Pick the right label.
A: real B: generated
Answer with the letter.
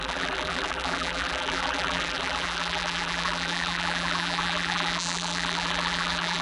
B